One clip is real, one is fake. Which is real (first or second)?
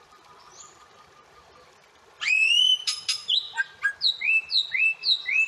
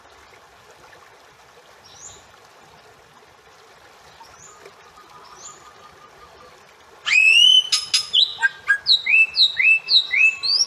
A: second